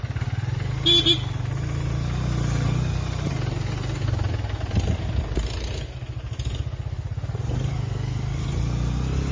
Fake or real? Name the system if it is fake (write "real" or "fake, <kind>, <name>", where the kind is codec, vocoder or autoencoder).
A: real